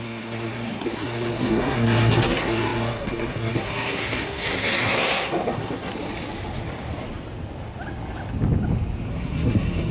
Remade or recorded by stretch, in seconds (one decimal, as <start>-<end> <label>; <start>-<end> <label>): 0.0-5.9 remade; 5.9-9.1 recorded; 9.1-9.9 remade